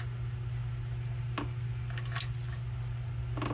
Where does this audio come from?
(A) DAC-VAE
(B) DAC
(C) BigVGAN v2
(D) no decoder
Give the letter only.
D